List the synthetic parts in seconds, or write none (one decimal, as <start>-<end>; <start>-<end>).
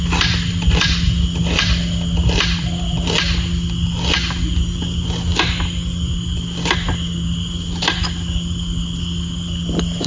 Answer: none